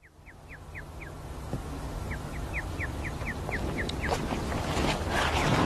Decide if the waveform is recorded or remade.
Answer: recorded